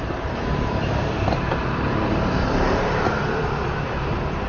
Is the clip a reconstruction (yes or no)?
yes